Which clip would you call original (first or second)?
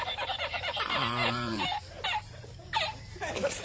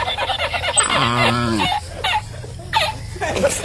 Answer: second